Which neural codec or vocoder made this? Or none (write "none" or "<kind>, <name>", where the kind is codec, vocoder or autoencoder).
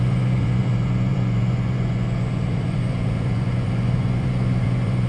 vocoder, Vocos